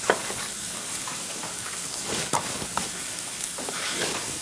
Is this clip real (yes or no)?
no